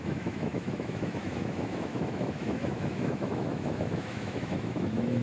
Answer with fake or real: fake